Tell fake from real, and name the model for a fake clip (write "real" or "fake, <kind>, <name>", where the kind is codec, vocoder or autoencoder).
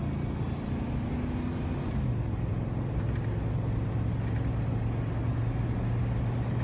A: real